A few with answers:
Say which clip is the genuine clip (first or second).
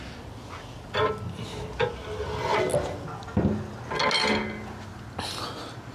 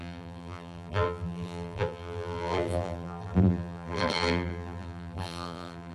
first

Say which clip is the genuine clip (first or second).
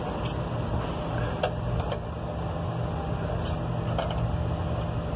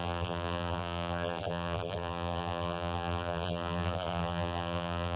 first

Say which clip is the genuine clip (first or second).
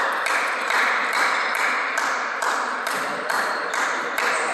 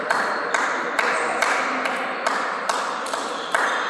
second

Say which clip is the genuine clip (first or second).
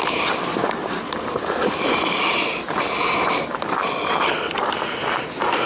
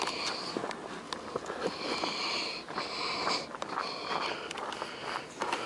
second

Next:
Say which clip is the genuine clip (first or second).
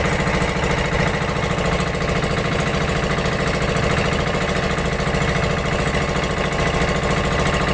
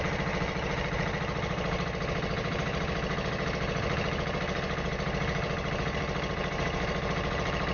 first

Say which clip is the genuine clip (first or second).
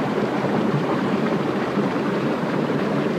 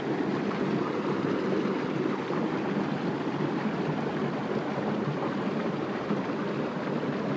second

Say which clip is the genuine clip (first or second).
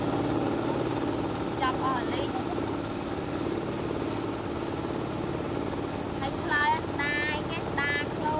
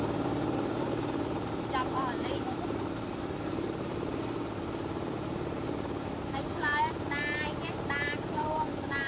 first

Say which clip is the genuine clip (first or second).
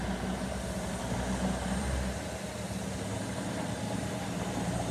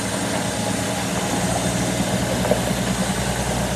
second